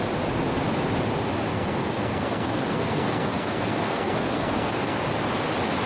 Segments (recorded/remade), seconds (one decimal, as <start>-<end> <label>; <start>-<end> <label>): 0.0-1.5 recorded; 1.5-5.0 remade; 5.0-5.9 recorded